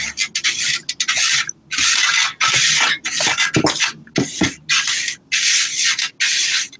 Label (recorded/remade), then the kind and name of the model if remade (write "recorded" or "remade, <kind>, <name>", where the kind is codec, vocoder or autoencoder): recorded